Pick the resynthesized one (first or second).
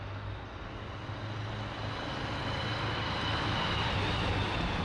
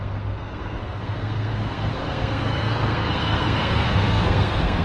second